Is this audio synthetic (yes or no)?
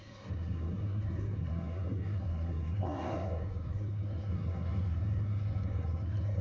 yes